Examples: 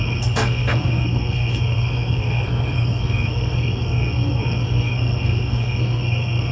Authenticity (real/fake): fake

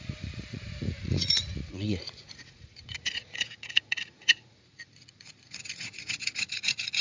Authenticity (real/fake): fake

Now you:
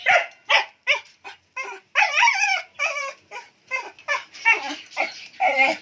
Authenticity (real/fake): fake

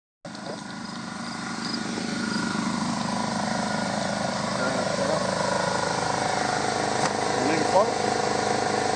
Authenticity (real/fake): real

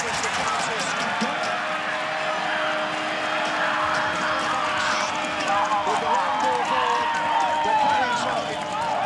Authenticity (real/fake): real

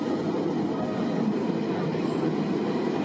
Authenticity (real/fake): real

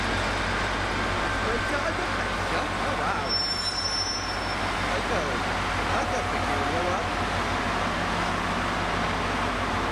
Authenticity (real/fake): real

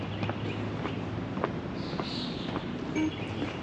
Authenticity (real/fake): real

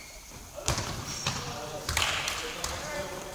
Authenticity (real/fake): fake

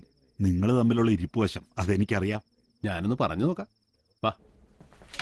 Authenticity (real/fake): real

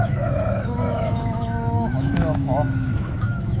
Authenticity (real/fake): fake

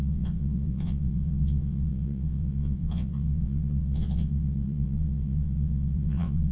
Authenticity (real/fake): fake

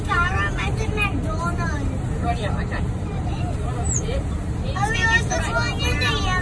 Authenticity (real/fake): real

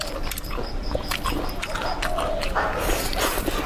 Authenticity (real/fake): real